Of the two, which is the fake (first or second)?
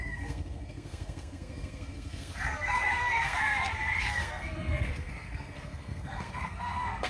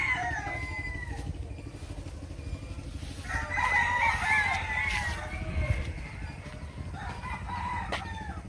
first